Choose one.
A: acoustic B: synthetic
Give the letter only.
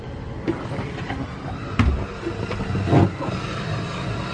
A